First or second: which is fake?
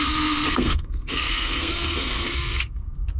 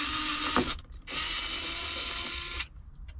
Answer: first